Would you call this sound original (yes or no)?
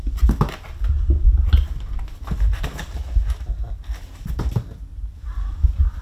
yes